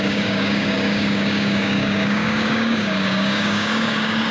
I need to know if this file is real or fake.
fake